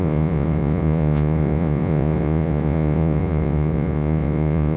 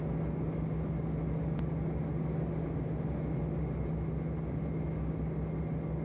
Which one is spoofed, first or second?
first